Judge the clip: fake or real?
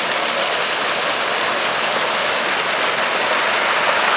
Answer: real